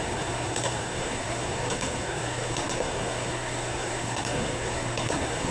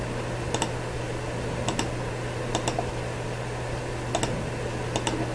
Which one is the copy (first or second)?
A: first